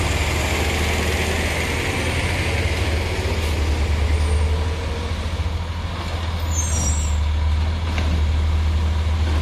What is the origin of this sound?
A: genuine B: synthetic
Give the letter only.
A